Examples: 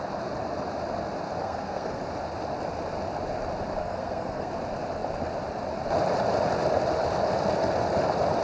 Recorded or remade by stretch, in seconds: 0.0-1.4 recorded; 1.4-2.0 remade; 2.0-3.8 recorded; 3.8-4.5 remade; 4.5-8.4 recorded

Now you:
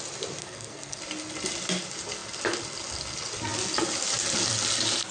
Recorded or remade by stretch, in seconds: 0.0-0.4 recorded; 0.4-1.0 remade; 1.0-5.1 recorded

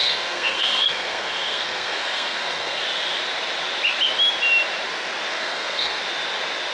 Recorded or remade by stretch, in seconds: 0.0-2.8 remade; 2.8-5.3 recorded; 5.3-6.0 remade; 6.0-6.7 recorded

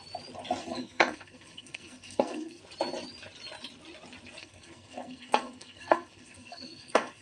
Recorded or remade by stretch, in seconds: 0.0-0.6 recorded; 0.6-2.6 remade; 2.6-4.4 recorded; 4.4-7.2 remade

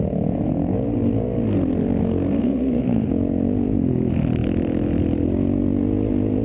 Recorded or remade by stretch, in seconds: 0.0-2.0 recorded; 2.0-3.1 remade; 3.1-6.4 recorded